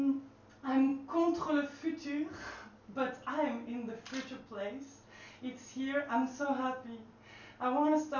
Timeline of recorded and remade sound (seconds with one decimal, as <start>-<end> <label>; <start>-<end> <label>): 0.0-8.2 recorded